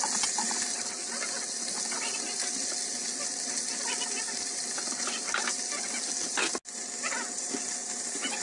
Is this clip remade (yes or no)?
no